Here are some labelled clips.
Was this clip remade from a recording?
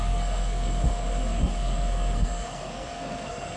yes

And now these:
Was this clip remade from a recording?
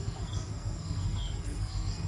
yes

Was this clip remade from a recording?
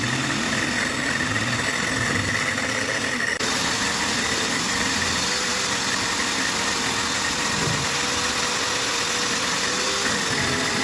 no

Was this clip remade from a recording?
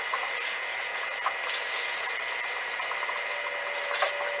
no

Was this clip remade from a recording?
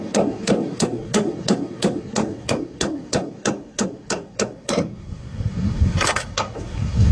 yes